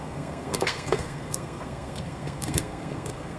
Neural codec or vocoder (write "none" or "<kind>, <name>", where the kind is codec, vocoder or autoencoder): codec, SNAC